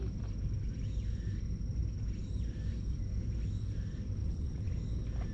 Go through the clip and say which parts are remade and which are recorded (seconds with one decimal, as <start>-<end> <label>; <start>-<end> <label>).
0.0-4.2 recorded; 4.2-4.7 remade; 4.7-5.3 recorded